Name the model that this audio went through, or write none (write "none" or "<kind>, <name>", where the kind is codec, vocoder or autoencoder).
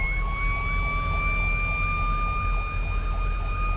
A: none